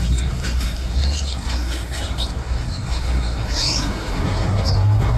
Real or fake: fake